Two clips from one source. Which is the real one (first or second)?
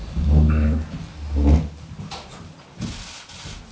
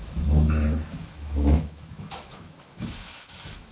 first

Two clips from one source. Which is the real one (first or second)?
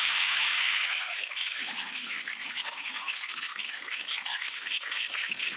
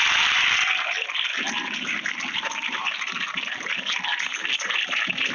second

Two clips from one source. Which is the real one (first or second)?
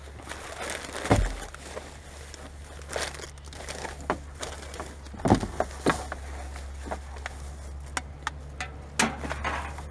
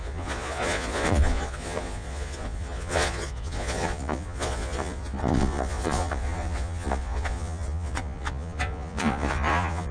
first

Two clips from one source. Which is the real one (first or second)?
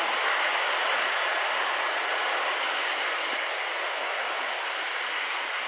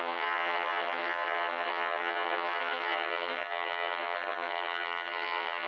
first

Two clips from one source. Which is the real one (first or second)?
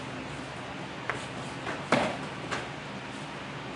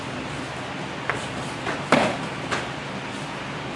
first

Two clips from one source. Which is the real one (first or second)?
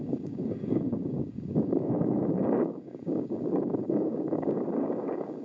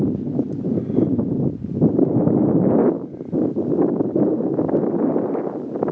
second